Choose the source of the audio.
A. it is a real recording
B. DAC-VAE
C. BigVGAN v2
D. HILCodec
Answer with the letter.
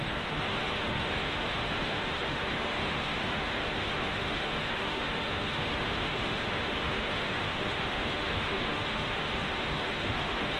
B